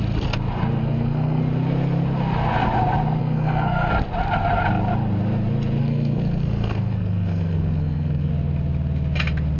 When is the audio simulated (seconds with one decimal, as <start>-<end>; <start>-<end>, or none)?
0.8-1.4; 3.2-3.9; 5.8-8.3